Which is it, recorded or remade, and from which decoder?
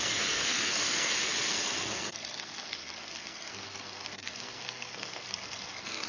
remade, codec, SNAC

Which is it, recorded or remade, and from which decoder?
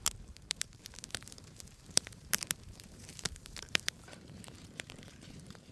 remade, vocoder, BigVGAN v2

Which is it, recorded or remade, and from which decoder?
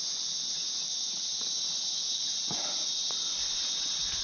recorded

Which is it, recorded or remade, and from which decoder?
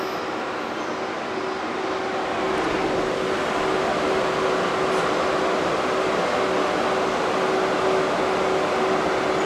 recorded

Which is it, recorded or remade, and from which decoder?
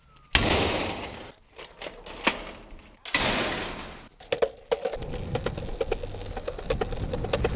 recorded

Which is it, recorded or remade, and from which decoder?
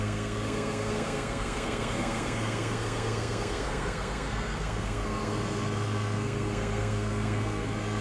remade, codec, SNAC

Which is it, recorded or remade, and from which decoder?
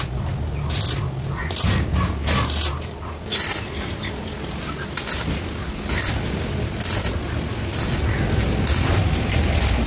recorded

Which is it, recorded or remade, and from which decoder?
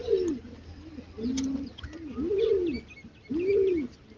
recorded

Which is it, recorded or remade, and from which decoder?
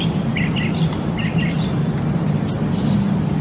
recorded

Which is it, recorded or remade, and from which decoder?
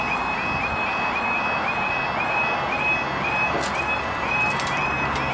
recorded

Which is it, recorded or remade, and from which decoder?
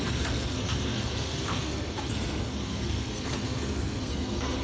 remade, codec, SNAC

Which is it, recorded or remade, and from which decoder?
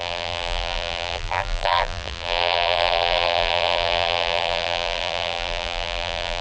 remade, vocoder, BigVGAN v2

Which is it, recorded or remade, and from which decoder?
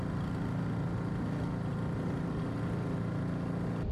recorded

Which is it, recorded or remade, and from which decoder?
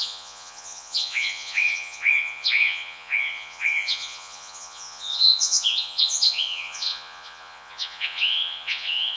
remade, vocoder, Vocos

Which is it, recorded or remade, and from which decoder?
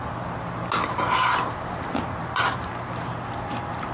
recorded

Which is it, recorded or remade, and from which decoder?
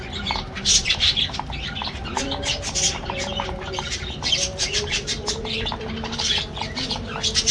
remade, vocoder, BigVGAN v2